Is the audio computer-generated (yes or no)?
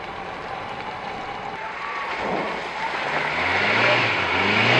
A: no